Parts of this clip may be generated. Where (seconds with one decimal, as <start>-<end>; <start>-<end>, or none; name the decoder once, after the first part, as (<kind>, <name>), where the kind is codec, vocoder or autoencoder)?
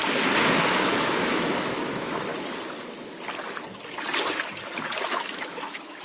0.7-2.3 (autoencoder, DAC-VAE); 5.1-6.0